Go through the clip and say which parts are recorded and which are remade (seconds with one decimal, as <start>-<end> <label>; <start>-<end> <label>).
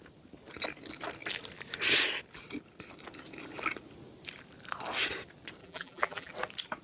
0.0-5.6 recorded; 5.6-6.3 remade; 6.3-6.8 recorded